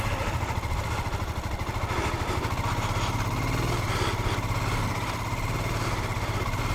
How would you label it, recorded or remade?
recorded